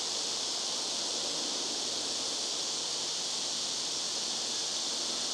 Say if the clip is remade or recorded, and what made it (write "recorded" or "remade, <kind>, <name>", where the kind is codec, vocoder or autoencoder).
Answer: recorded